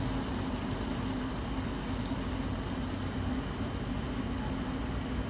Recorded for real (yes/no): yes